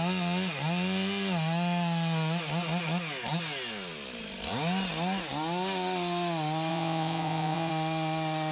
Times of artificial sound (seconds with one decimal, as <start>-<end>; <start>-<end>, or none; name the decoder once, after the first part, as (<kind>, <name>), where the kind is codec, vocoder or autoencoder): 6.7-7.7 (vocoder, Vocos)